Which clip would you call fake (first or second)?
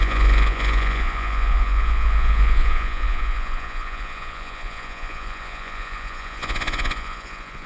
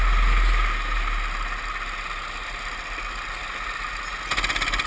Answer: first